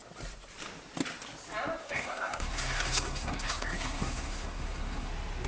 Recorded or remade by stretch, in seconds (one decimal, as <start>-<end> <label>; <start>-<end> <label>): 0.0-1.8 recorded; 1.8-5.1 remade; 5.1-5.5 recorded